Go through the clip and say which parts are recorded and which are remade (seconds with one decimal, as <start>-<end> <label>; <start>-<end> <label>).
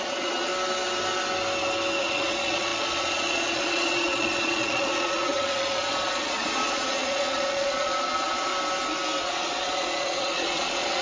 0.0-0.5 remade; 0.5-2.0 recorded; 2.0-8.5 remade; 8.5-9.2 recorded; 9.2-11.0 remade